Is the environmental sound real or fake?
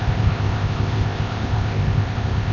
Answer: fake